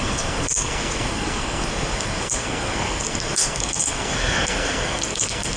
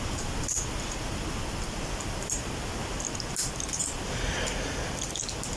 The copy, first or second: first